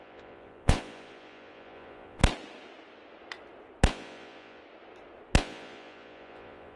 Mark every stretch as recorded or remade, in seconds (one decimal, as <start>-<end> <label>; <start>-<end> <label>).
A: 0.0-2.2 remade; 2.2-3.9 recorded; 3.9-4.6 remade; 4.6-5.4 recorded; 5.4-6.8 remade